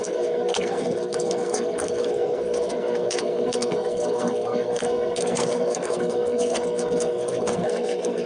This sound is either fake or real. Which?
fake